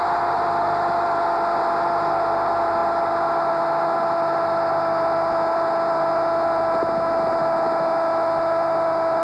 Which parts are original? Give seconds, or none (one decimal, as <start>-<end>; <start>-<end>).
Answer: 0.0-9.2